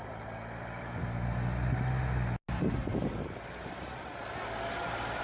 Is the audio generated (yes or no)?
no